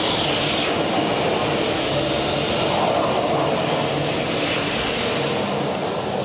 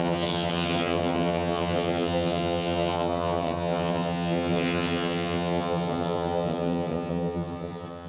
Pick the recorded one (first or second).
first